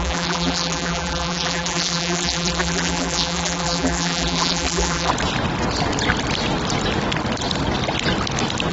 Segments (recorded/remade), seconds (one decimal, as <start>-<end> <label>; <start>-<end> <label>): 0.0-5.1 remade; 5.1-8.7 recorded